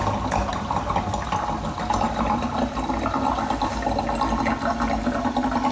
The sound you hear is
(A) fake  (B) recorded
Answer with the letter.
B